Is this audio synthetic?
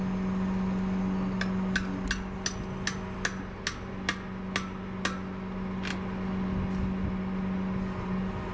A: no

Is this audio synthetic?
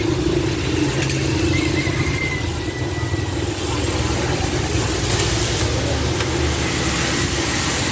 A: no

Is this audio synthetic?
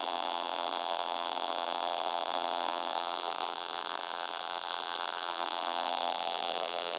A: yes